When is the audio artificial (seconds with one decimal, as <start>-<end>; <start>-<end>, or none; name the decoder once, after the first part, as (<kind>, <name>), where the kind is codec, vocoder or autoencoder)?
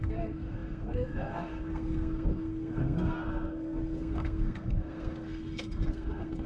0.0-6.5 (codec, SNAC)